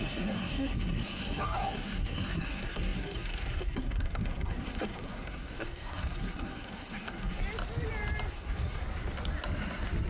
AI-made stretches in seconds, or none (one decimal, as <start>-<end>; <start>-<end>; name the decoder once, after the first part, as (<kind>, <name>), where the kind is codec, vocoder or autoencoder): 0.0-7.4 (codec, SNAC); 8.3-8.8